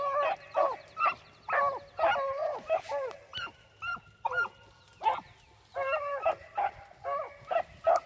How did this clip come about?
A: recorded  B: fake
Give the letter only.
A